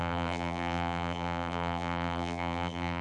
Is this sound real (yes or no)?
no